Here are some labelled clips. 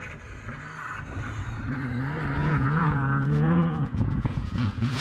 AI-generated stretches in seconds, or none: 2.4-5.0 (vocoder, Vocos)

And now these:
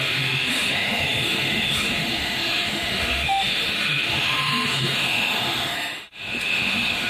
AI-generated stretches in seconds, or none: 0.0-7.1 (autoencoder, DAC-VAE)

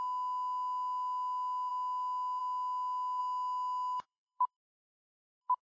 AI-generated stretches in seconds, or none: 3.2-5.6 (autoencoder, DAC-VAE)

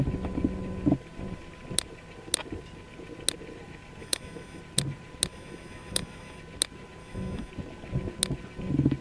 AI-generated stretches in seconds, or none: 4.0-4.6 (autoencoder, DAC-VAE); 5.3-6.4; 7.0-7.5

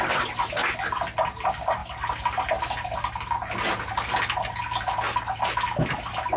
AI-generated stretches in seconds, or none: none

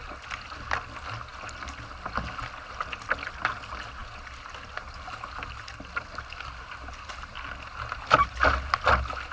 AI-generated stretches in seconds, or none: none